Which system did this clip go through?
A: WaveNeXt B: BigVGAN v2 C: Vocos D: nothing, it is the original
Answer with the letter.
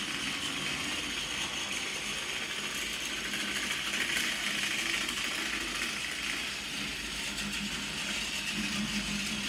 D